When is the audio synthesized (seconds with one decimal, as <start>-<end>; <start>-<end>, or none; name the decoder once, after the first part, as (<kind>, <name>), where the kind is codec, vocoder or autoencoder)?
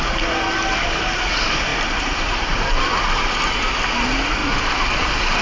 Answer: 1.7-3.4 (vocoder, BigVGAN v2); 4.4-5.4